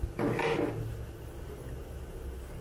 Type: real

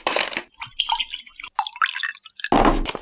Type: real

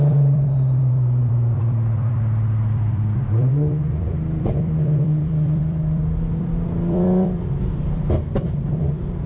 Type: fake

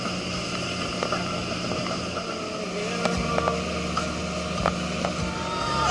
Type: real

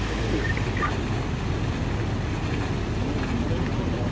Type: real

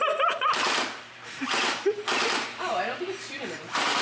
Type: fake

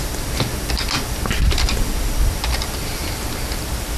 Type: real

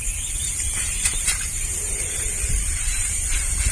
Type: fake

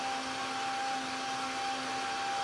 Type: real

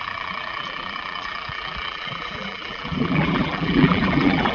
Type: fake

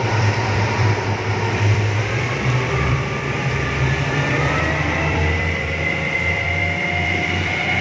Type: fake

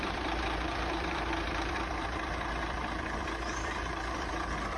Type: fake